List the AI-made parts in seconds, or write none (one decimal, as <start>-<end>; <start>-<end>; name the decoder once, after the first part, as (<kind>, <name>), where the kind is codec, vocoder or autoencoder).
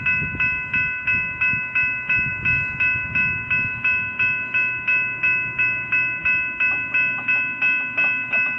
none